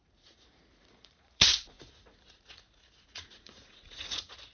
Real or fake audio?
fake